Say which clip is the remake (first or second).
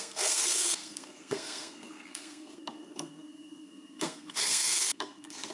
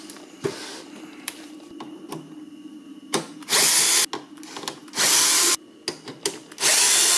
first